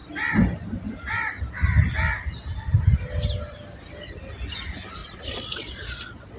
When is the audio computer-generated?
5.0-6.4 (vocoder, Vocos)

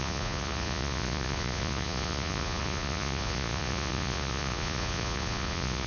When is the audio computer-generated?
0.0-5.9 (vocoder, Vocos)

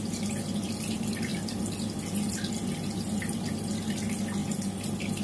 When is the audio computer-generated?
none

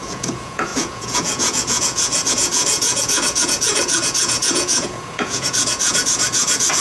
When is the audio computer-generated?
0.0-6.8 (vocoder, Vocos)

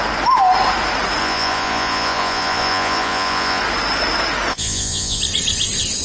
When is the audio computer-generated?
1.2-3.6 (vocoder, Vocos); 4.5-5.2

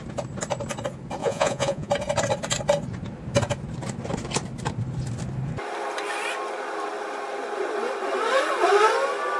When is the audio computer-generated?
1.2-1.9 (vocoder, Vocos)